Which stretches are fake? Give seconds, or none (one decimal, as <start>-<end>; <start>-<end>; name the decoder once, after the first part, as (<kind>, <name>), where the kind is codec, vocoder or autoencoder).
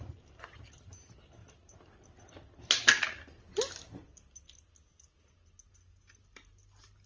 none